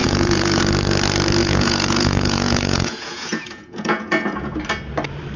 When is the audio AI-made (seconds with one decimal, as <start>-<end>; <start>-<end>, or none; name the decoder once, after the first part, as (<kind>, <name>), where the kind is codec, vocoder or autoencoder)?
0.0-0.6 (vocoder, Vocos); 1.4-4.6